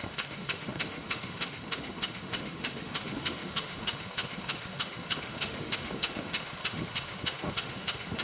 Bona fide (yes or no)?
no